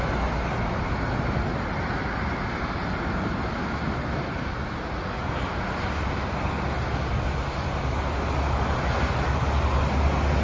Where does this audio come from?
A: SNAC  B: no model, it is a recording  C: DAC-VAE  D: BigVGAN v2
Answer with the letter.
B